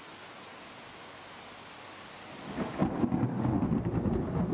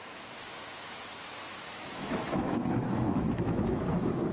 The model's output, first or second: second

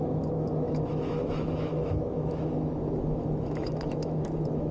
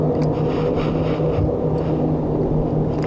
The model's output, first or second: first